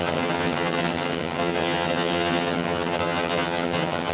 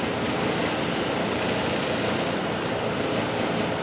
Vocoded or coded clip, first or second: first